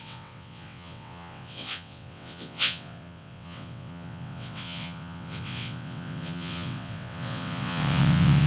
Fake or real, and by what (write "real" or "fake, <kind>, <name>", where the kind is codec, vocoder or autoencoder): fake, vocoder, WaveNeXt